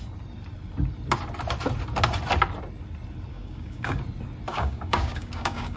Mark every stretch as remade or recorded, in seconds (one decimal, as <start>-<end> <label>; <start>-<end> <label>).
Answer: 0.0-3.3 recorded; 3.3-4.0 remade; 4.0-4.5 recorded; 4.5-5.8 remade